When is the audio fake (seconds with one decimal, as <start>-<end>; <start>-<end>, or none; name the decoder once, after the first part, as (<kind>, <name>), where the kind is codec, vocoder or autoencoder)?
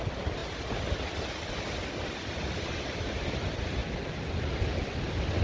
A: 3.8-4.8 (vocoder, BigVGAN v2)